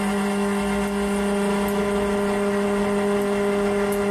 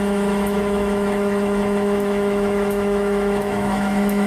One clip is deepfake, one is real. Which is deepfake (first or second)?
second